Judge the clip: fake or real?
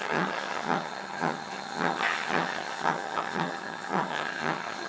fake